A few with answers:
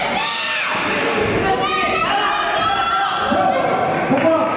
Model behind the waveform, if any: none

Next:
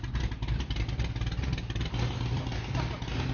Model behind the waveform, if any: none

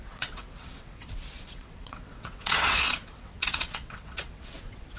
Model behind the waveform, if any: vocoder, WaveNeXt